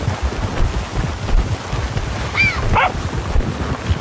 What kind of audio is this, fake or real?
real